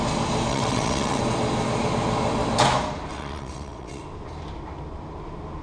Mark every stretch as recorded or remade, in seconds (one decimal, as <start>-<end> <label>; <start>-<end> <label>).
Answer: 0.0-0.5 recorded; 0.5-1.2 remade; 1.2-3.1 recorded; 3.1-4.0 remade; 4.0-5.6 recorded

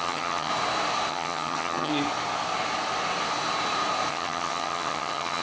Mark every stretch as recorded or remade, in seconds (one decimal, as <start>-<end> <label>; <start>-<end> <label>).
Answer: 0.0-0.5 remade; 0.5-1.1 recorded; 1.1-1.9 remade; 1.9-4.1 recorded; 4.1-5.4 remade